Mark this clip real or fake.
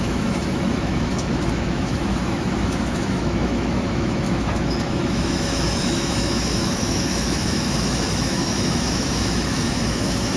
fake